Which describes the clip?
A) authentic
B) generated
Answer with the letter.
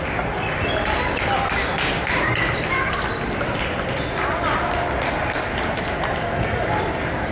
A